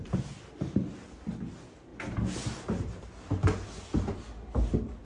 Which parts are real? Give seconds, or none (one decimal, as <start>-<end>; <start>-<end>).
0.0-5.0